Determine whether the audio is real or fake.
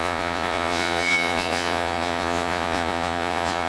fake